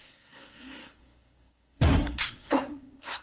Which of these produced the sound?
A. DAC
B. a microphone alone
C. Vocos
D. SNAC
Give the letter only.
D